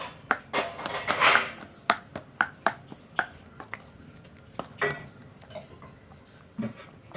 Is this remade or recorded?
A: recorded